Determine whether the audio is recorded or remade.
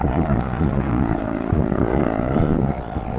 remade